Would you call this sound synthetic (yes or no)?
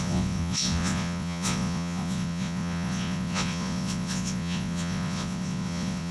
yes